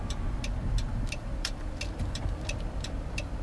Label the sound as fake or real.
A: fake